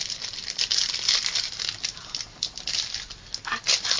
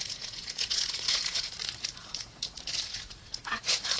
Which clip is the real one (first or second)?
first